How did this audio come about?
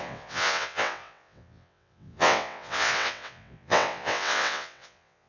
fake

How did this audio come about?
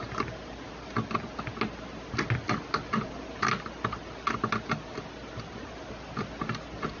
real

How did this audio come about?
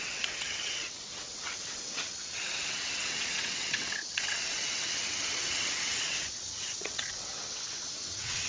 fake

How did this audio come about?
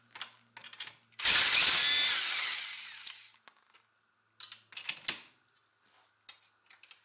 real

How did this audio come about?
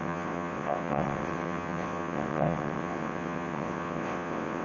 fake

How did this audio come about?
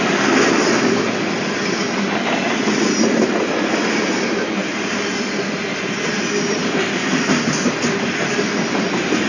real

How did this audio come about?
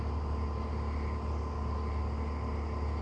real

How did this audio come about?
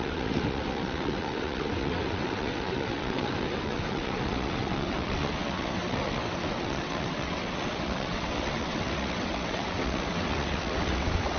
fake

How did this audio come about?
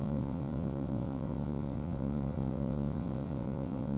fake